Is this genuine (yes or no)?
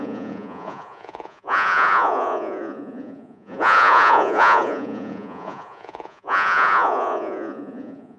no